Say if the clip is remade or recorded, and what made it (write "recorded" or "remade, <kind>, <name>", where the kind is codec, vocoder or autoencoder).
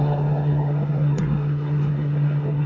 remade, codec, SNAC